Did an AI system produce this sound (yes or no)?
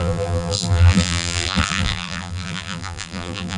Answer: yes